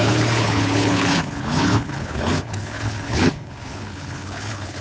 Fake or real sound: fake